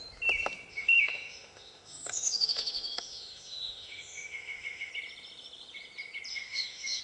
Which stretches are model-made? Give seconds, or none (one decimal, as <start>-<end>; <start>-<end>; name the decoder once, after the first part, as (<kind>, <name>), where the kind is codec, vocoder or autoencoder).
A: 0.7-4.9 (autoencoder, DAC-VAE); 6.3-7.0